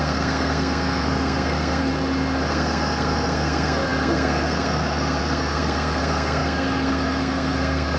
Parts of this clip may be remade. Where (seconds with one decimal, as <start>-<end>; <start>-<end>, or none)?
0.0-1.9; 2.5-8.0